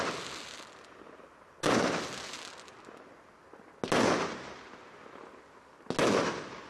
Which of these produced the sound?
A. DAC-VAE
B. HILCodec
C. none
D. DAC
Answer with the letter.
C